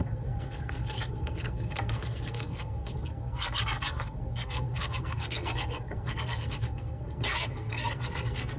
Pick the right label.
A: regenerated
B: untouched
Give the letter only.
A